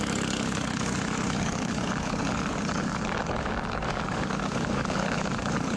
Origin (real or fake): fake